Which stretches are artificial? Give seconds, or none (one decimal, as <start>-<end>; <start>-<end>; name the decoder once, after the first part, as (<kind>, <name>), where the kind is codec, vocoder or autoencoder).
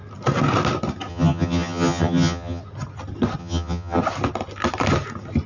1.1-2.6 (vocoder, HiFi-GAN); 3.4-4.0